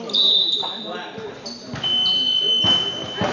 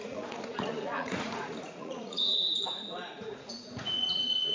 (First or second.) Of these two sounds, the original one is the first